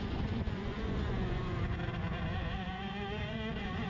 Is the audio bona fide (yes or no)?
no